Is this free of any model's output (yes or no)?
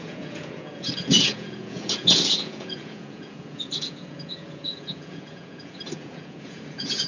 no